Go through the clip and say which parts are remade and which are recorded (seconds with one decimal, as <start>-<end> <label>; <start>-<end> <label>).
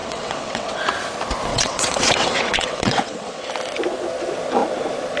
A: 0.0-0.8 remade; 0.8-1.5 recorded; 1.5-3.5 remade; 3.5-5.2 recorded